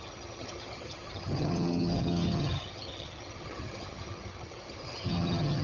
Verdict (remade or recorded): remade